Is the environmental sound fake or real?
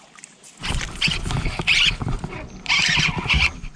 real